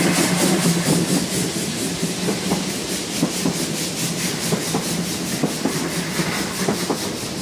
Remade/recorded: recorded